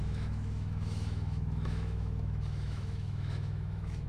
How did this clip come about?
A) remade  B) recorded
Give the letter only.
A